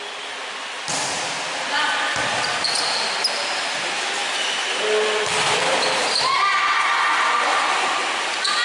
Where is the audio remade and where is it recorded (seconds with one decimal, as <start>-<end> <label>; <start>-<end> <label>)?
0.0-8.6 recorded